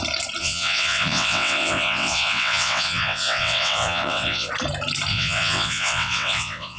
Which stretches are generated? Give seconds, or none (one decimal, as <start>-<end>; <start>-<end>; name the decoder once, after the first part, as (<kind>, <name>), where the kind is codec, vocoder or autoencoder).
0.4-4.5 (vocoder, WaveNeXt); 5.1-6.8